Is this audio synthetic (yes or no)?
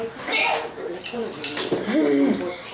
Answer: no